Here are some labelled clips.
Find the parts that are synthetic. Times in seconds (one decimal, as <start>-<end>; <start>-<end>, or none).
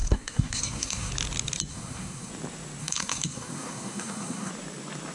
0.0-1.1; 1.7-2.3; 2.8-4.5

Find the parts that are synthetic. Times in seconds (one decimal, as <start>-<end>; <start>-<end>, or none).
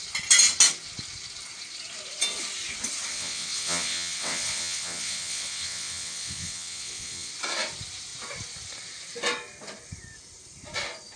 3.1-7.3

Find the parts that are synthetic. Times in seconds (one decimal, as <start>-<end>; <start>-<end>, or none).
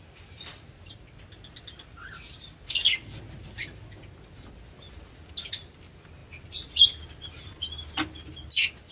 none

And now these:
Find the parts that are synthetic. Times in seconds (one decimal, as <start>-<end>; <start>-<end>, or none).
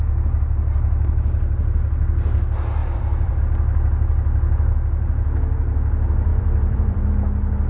2.8-3.4; 6.3-7.1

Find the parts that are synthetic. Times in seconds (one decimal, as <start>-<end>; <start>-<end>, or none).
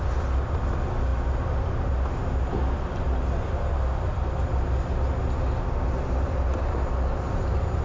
none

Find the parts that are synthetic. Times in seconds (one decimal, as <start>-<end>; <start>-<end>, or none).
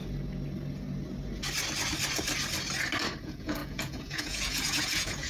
3.2-5.3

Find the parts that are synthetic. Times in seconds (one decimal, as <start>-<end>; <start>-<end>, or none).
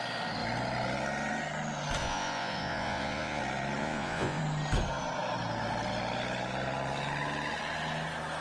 2.0-3.4; 3.8-4.4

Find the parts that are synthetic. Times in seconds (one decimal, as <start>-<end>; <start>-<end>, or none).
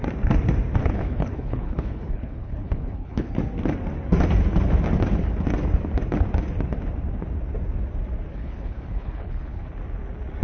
0.8-3.3; 8.3-9.7